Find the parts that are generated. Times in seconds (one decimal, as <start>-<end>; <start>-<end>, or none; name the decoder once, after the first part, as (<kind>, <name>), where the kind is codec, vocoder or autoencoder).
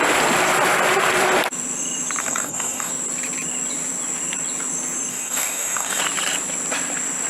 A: 2.2-2.9 (codec, DAC); 5.1-6.0